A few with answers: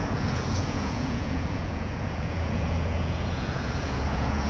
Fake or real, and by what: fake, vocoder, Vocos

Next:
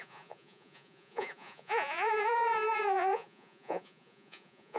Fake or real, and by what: fake, vocoder, Vocos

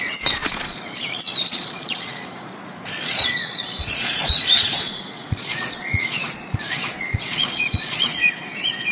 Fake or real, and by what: fake, vocoder, Vocos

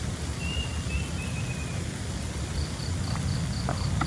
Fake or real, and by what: real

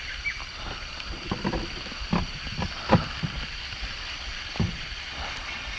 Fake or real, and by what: real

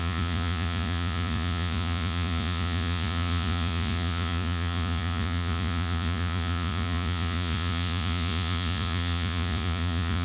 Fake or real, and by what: fake, vocoder, Vocos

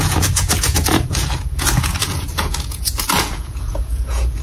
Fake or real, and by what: fake, vocoder, Vocos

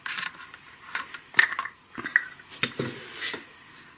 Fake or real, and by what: real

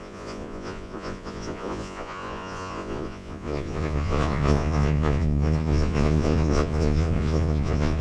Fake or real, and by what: fake, vocoder, Vocos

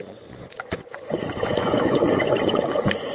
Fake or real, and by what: fake, vocoder, Vocos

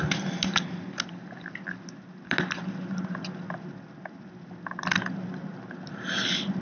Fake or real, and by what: real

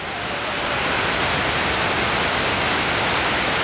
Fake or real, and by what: real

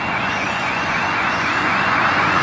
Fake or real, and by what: fake, vocoder, Vocos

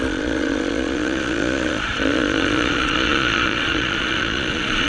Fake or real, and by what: fake, vocoder, Vocos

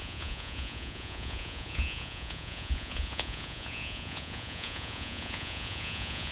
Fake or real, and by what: fake, vocoder, Vocos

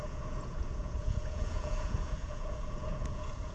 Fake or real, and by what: fake, vocoder, Vocos